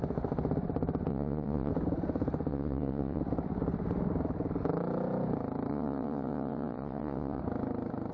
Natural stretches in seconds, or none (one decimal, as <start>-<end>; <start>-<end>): 0.0-1.1; 1.7-2.5; 3.2-5.7; 7.4-8.1